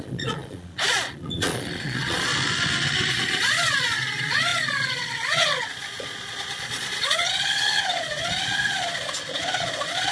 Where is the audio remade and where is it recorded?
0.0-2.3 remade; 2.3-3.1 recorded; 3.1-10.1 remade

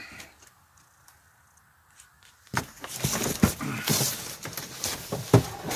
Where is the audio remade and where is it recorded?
0.0-3.5 recorded; 3.5-5.8 remade

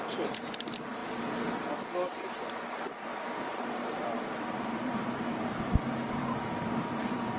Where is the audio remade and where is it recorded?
0.0-1.0 remade; 1.0-2.4 recorded; 2.4-7.4 remade

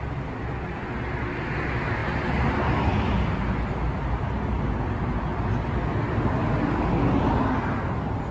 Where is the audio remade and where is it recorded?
0.0-8.3 recorded

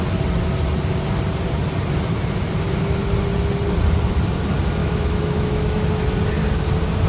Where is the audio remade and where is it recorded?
0.0-4.8 recorded; 4.8-5.9 remade; 5.9-7.1 recorded